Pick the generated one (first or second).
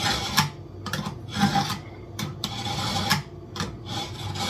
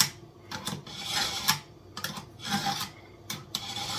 second